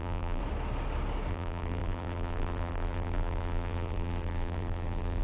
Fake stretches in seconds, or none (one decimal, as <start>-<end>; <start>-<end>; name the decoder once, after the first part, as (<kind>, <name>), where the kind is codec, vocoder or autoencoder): 0.0-0.4 (vocoder, BigVGAN v2); 1.3-5.2